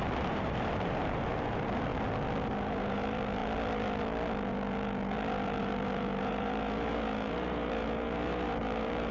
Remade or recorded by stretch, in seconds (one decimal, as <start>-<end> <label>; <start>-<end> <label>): 0.0-1.9 remade; 1.9-2.6 recorded; 2.6-3.4 remade; 3.4-5.6 recorded; 5.6-9.1 remade